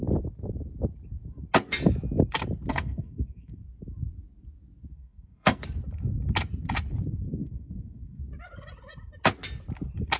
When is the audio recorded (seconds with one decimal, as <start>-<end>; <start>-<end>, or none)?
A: 0.0-2.7; 3.6-4.9; 5.6-7.4; 8.2-10.2